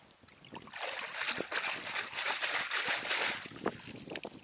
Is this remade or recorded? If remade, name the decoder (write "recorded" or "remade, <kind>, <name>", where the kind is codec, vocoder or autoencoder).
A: recorded